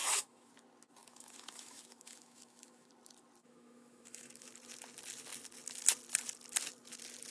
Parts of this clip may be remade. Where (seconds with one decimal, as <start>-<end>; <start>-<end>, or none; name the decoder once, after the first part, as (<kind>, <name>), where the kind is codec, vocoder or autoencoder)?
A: 0.0-0.5 (autoencoder, DAC-VAE); 1.0-2.9; 3.4-4.5